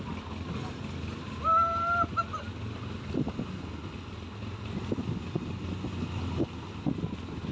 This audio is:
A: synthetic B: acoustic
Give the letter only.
B